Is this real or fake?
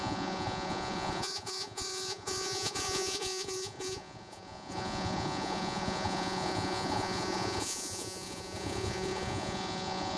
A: fake